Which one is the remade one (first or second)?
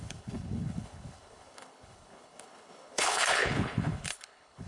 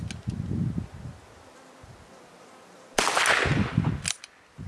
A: first